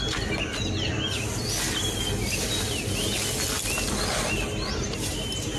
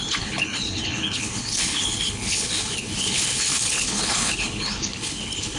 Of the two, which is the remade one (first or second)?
second